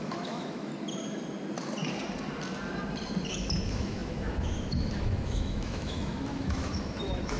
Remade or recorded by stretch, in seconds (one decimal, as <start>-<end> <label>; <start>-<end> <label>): 0.0-0.7 remade; 0.7-3.3 recorded; 3.3-7.4 remade